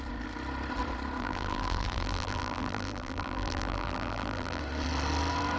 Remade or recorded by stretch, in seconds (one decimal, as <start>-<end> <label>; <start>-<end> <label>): 0.0-1.2 recorded; 1.2-4.6 remade; 4.6-5.6 recorded